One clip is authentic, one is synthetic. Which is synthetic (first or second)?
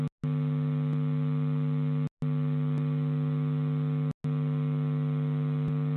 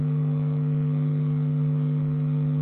second